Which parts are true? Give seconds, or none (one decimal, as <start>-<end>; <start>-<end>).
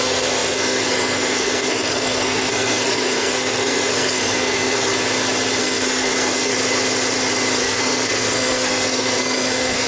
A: 4.9-5.6; 6.5-7.6